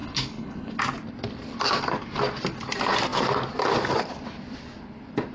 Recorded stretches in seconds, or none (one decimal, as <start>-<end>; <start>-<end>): 0.8-5.3